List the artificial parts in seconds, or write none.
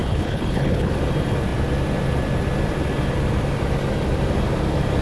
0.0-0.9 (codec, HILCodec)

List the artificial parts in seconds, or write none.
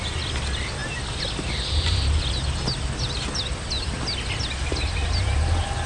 none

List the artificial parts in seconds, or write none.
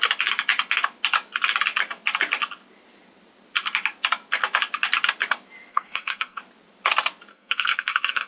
5.7-6.4 (codec, SNAC); 7.3-8.3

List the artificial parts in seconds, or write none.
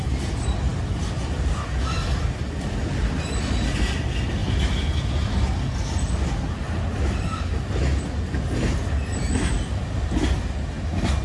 none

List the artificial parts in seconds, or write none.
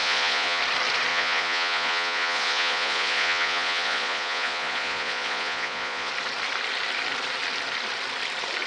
0.0-0.6 (vocoder, Vocos); 1.1-6.1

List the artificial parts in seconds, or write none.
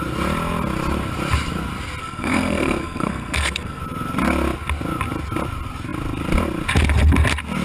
2.0-3.8 (codec, SNAC)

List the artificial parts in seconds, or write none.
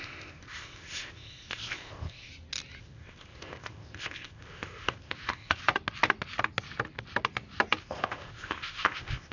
0.0-2.3 (codec, ZipCodec); 2.8-5.6; 7.8-9.3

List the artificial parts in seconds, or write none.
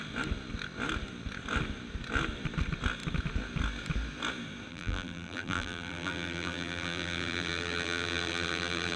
4.7-9.0 (vocoder, BigVGAN v2)